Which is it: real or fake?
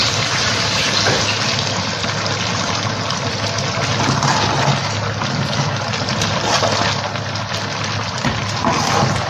real